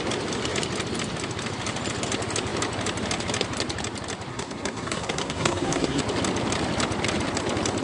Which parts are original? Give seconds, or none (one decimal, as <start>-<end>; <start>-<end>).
0.0-4.3; 6.0-7.8